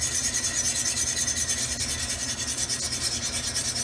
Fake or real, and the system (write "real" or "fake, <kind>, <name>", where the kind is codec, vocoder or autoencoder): real